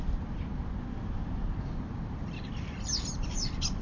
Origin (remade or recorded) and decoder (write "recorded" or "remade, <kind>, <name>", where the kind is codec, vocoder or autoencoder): recorded